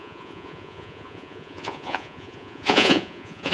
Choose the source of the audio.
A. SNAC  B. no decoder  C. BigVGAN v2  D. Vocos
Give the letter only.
D